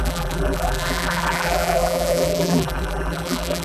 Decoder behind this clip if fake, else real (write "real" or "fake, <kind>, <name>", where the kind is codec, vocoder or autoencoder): fake, vocoder, BigVGAN v2